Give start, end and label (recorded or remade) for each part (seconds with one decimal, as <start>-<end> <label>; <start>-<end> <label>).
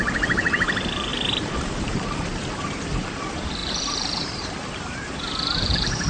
0.0-6.1 remade